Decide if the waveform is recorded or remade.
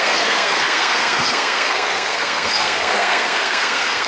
remade